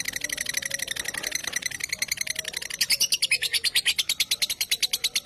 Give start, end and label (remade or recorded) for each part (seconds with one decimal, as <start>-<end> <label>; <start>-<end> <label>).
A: 0.0-5.3 recorded